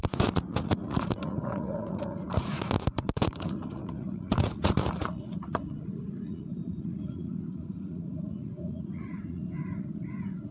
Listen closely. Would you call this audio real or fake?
fake